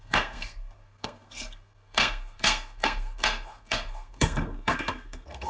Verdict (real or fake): fake